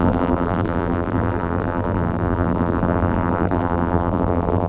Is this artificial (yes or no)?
yes